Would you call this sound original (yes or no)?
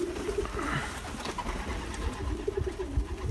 yes